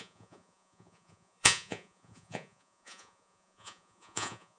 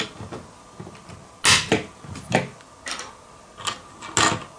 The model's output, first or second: first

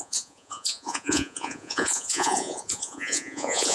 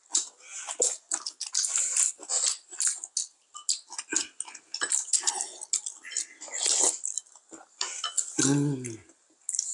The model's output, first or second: first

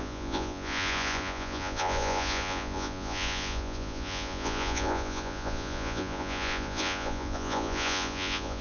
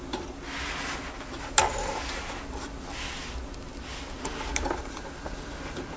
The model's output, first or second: first